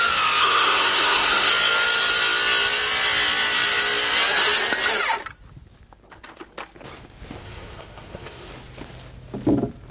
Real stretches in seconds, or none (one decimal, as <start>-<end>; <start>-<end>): 0.0-0.4; 1.5-7.4; 8.5-9.9